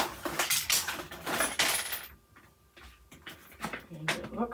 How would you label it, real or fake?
real